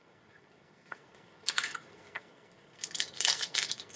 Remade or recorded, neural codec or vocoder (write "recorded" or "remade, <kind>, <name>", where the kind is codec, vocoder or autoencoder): remade, codec, SNAC